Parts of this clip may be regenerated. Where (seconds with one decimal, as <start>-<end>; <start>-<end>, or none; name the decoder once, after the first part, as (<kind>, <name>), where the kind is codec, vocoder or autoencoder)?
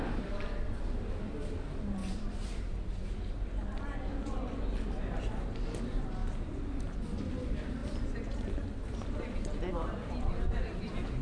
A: none